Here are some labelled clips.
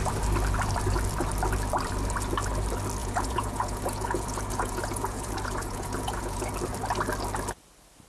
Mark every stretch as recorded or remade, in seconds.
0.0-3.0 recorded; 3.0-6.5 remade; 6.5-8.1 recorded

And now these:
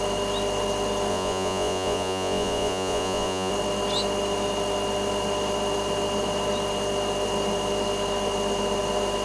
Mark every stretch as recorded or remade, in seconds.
0.0-1.1 recorded; 1.1-3.5 remade; 3.5-9.2 recorded

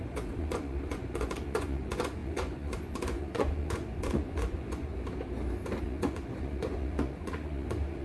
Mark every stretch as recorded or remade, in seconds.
0.0-4.9 remade; 4.9-5.8 recorded; 5.8-8.0 remade

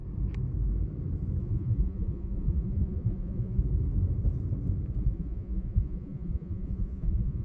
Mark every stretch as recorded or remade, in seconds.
0.0-1.4 recorded; 1.4-3.6 remade; 3.6-5.0 recorded; 5.0-7.4 remade

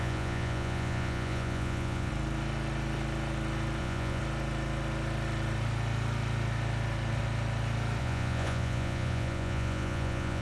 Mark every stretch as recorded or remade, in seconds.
0.0-2.1 remade; 2.1-3.8 recorded; 3.8-4.2 remade; 4.2-8.0 recorded; 8.0-10.4 remade